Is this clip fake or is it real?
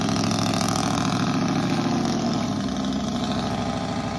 real